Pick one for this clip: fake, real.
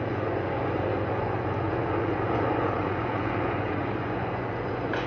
fake